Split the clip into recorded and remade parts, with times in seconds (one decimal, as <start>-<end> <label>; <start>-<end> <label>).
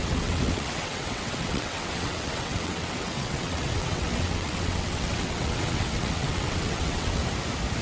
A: 0.0-7.2 remade; 7.2-7.8 recorded